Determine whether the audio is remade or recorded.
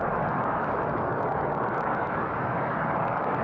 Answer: remade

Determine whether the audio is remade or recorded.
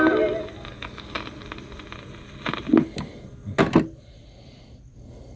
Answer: recorded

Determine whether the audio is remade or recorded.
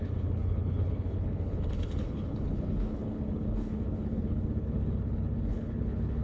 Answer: remade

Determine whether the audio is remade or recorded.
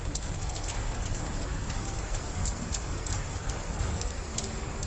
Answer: remade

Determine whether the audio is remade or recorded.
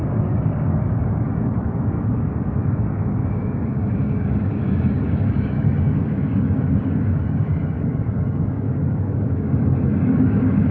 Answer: remade